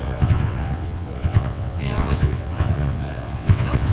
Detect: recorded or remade remade